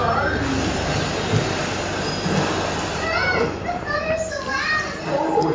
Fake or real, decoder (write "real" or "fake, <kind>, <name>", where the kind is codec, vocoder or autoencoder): real